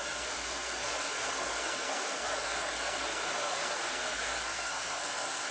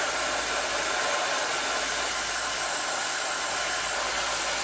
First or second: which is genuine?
second